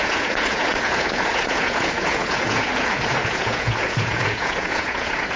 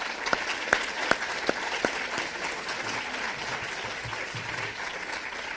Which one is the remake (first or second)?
first